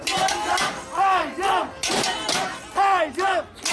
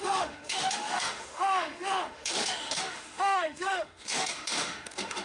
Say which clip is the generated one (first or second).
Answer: second